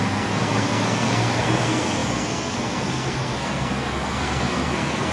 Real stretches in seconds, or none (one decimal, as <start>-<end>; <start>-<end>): none